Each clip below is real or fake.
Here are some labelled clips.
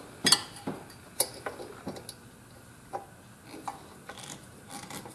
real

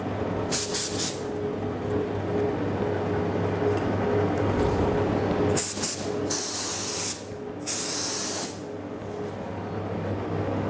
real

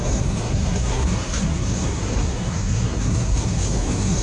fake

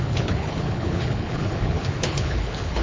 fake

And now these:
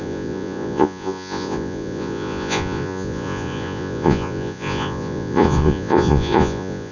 fake